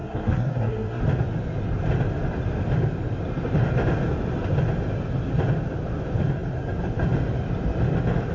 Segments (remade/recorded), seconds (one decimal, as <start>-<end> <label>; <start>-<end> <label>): 0.0-1.0 remade; 1.0-8.3 recorded